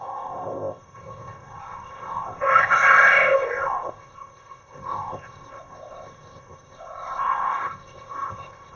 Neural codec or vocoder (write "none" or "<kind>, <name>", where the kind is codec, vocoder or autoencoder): codec, ZipCodec